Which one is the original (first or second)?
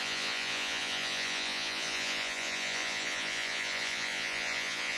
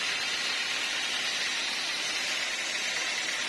second